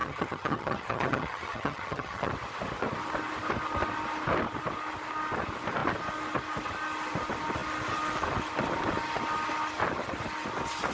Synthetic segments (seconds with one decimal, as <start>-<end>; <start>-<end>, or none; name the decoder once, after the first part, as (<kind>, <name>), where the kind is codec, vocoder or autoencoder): 0.0-2.3 (vocoder, HiFi-GAN)